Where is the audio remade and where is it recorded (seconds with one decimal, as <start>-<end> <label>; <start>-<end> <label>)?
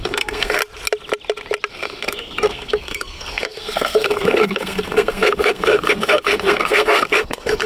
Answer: 0.0-0.6 remade; 0.6-1.7 recorded; 1.7-7.7 remade